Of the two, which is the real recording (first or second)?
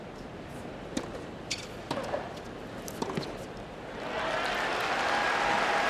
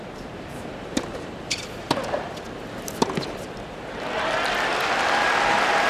first